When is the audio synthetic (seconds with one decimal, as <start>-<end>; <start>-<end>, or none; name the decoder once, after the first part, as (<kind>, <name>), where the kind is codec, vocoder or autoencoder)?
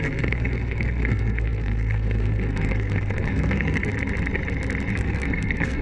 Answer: 0.0-3.9 (codec, SNAC); 4.9-5.8